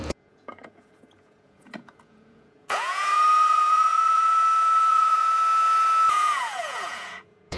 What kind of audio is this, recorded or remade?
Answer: remade